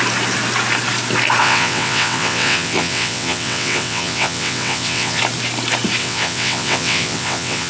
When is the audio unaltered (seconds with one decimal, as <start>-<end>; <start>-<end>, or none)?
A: 0.0-1.4; 5.2-6.0